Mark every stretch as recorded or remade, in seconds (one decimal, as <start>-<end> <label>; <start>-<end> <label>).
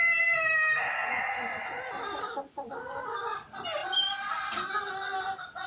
0.0-5.7 recorded